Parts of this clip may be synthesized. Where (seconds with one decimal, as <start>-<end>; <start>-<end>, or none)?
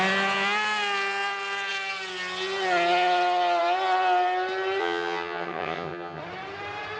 4.8-6.2